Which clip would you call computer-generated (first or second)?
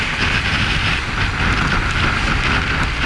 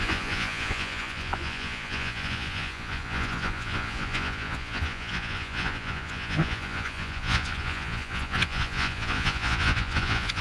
second